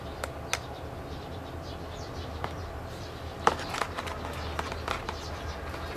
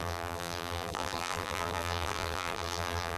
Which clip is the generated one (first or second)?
second